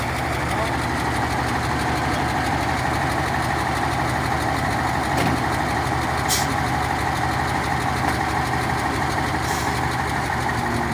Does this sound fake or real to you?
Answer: real